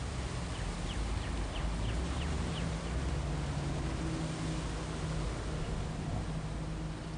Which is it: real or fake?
real